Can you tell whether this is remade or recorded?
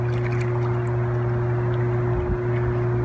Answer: recorded